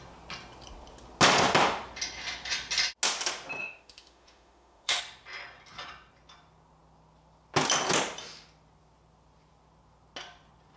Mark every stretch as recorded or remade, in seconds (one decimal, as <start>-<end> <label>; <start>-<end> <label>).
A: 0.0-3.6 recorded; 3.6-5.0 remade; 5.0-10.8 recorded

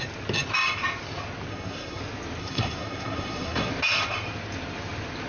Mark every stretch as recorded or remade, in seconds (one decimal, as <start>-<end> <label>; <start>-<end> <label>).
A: 0.0-1.5 recorded; 1.5-2.0 remade; 2.0-2.4 recorded; 2.4-3.7 remade; 3.7-5.3 recorded

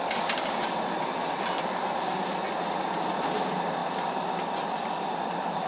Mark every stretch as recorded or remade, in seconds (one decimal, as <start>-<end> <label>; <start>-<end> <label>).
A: 0.0-5.7 recorded

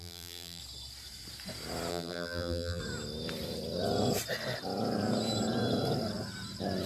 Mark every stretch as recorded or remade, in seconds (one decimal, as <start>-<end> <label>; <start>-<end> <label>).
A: 0.0-0.6 remade; 0.6-1.9 recorded; 1.9-2.8 remade; 2.8-6.9 recorded